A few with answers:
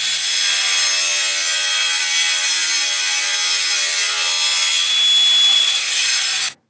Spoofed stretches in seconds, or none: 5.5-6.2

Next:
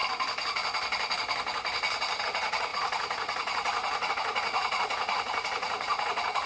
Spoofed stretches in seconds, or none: 2.2-6.5

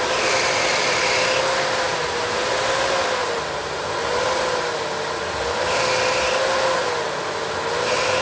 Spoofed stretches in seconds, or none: none

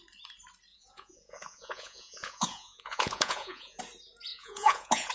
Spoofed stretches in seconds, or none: 0.7-3.8; 4.3-5.1

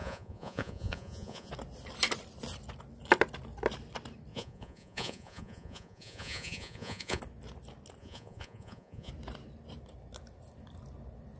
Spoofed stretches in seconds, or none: 0.0-1.5; 4.3-7.2; 8.0-9.1

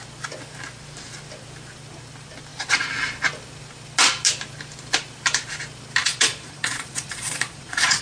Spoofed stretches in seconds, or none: 6.0-8.0